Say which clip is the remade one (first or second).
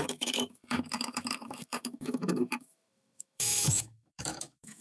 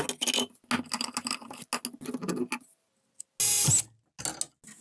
first